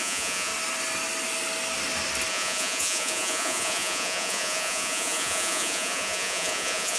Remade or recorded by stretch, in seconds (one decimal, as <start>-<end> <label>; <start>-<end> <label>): 0.0-0.5 remade; 0.5-2.3 recorded; 2.3-7.0 remade